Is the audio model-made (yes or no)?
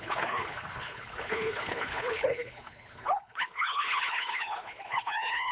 yes